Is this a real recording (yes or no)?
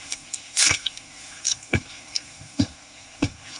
no